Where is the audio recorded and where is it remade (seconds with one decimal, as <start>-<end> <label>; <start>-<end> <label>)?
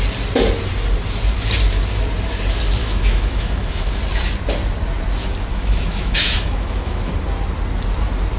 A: 0.0-2.8 recorded; 2.8-4.0 remade; 4.0-5.5 recorded; 5.5-7.1 remade; 7.1-8.4 recorded